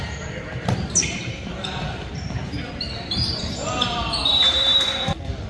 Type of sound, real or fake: fake